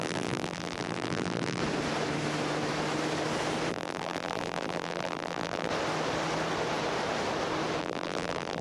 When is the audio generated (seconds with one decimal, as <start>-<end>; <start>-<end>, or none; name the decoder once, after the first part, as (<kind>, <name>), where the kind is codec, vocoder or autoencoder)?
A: 0.0-1.6 (vocoder, BigVGAN v2); 3.7-5.7; 7.8-8.6